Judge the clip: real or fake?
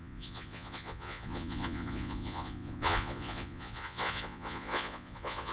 fake